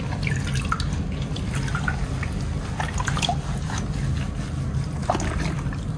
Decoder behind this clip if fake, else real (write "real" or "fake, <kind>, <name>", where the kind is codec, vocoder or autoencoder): real